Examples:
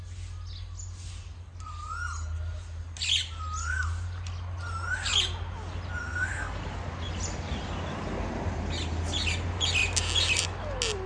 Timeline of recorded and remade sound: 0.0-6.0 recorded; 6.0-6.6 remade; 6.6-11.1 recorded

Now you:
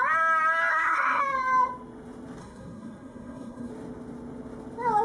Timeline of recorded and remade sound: 0.0-0.7 recorded; 0.7-1.2 remade; 1.2-2.4 recorded; 2.4-3.7 remade; 3.7-5.0 recorded

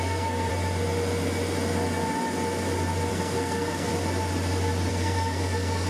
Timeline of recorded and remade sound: 0.0-0.5 remade; 0.5-3.1 recorded; 3.1-3.9 remade; 3.9-4.9 recorded; 4.9-5.9 remade

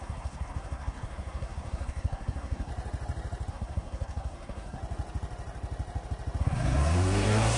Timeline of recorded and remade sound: 0.0-2.7 remade; 2.7-3.5 recorded; 3.5-4.8 remade; 4.8-6.4 recorded; 6.4-7.6 remade

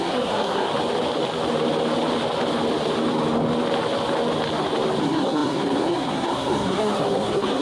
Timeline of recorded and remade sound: 0.0-0.7 remade; 0.7-5.0 recorded; 5.0-7.6 remade

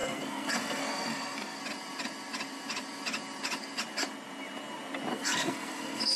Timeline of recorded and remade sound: 0.0-1.6 remade; 1.6-5.1 recorded; 5.1-6.2 remade